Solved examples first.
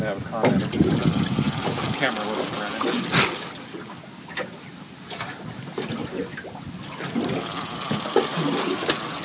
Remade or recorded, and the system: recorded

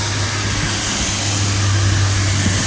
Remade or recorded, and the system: recorded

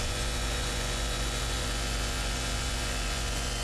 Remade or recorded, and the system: remade, vocoder, Vocos